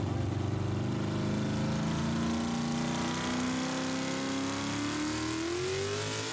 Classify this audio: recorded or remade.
recorded